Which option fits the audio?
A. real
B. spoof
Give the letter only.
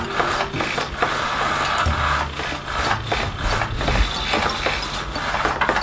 A